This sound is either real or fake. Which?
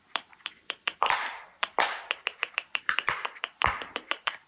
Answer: fake